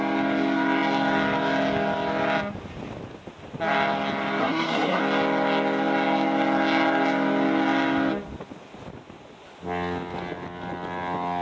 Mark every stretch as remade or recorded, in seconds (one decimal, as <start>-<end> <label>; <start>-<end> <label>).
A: 0.0-4.4 recorded; 4.4-5.0 remade; 5.0-11.4 recorded